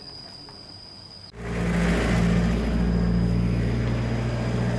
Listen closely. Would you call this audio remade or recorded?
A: recorded